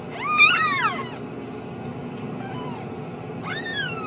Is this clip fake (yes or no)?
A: no